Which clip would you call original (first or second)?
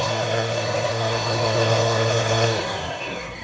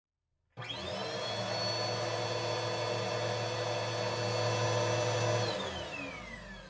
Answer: second